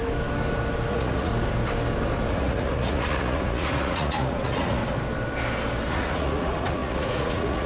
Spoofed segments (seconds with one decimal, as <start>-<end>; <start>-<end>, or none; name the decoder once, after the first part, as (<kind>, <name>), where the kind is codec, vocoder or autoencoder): 0.9-1.3 (vocoder, Vocos); 2.3-4.8; 5.9-7.7